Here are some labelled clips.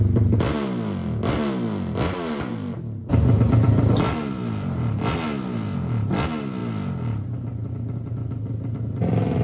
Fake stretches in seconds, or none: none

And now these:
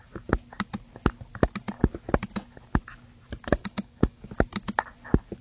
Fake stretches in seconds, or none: 3.6-4.3 (codec, DAC)

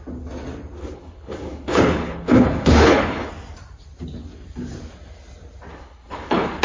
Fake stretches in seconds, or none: 0.8-3.3 (codec, HILCodec); 5.7-6.6

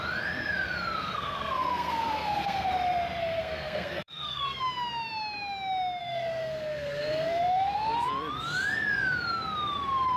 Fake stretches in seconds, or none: 1.0-2.7 (codec, SNAC); 3.2-4.6; 6.0-8.1

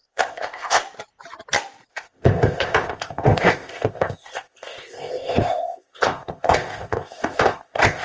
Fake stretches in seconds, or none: 0.0-0.8 (codec, ZipCodec); 1.9-8.0